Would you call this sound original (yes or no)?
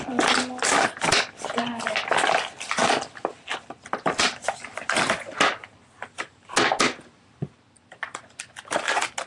yes